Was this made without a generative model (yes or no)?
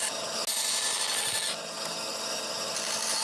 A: yes